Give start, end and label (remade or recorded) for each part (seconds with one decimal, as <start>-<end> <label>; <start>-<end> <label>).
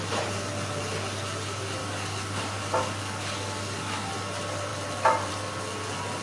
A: 0.0-1.8 recorded; 1.8-4.1 remade; 4.1-6.2 recorded